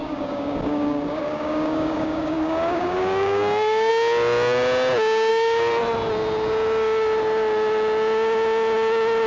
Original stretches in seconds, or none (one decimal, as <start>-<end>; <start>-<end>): 3.9-5.3; 5.8-9.3